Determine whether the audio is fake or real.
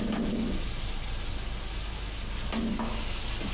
real